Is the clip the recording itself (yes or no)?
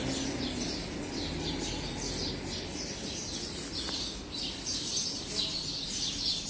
yes